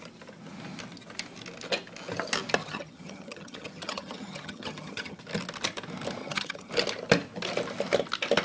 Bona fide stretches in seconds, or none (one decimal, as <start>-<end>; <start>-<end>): 0.0-2.6; 5.2-6.2; 6.7-8.4